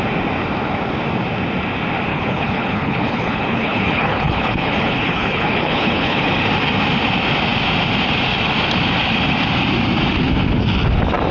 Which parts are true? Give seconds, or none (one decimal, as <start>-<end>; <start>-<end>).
0.0-2.1; 6.3-11.3

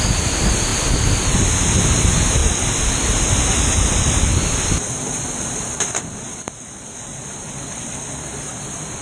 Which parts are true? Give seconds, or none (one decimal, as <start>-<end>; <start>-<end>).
0.0-3.9; 7.9-9.0

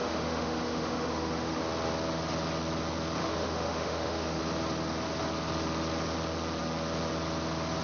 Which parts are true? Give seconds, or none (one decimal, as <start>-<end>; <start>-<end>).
1.6-3.2; 4.4-7.8

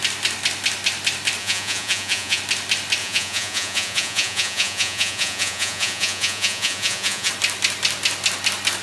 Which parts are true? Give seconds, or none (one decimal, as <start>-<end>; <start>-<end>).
0.0-1.4; 2.4-3.0; 7.3-8.8

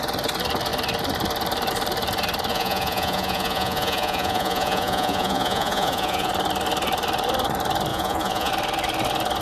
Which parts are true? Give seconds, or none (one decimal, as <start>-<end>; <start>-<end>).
0.0-2.5; 6.3-7.9; 8.5-9.4

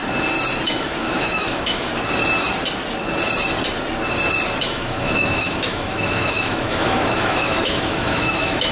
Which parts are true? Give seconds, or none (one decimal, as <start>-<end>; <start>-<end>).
0.0-1.0; 1.9-4.6